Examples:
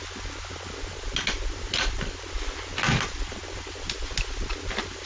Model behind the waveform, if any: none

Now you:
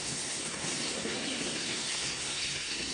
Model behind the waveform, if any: codec, SNAC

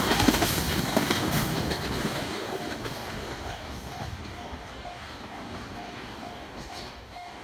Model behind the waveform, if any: codec, DAC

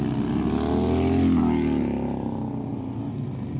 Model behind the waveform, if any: none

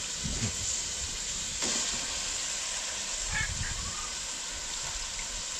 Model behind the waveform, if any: none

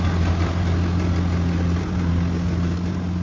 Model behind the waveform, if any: none